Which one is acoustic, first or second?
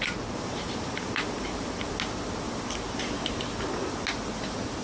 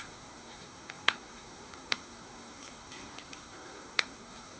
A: first